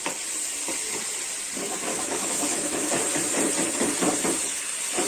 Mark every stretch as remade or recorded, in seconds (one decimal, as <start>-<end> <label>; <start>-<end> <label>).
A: 0.0-1.9 recorded; 1.9-2.9 remade; 2.9-5.1 recorded